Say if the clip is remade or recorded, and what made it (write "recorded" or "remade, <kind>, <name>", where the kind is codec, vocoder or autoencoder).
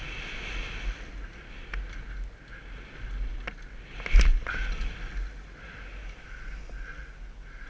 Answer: recorded